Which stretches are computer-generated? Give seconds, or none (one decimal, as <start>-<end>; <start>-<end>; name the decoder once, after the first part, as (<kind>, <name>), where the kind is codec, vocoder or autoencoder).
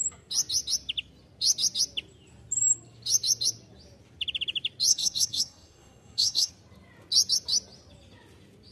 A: 4.9-6.5 (codec, SNAC)